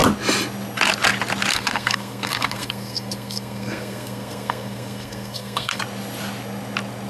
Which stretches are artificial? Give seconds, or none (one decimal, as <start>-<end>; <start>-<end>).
1.5-5.8